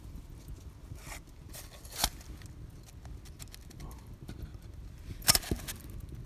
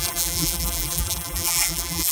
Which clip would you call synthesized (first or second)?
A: second